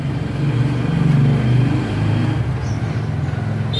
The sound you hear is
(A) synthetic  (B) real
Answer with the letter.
B